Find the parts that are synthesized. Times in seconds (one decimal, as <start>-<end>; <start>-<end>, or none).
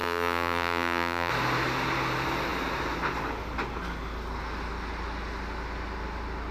0.0-1.3